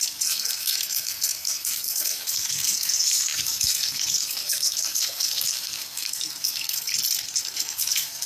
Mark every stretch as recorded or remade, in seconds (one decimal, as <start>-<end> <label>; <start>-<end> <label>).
0.0-6.9 remade; 6.9-7.4 recorded; 7.4-8.3 remade